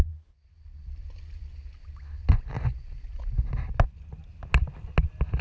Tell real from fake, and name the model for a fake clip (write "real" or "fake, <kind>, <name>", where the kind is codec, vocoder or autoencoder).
real